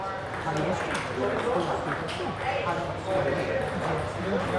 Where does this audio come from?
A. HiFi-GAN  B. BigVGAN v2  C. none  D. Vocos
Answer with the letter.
C